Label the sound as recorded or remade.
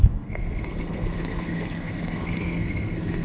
remade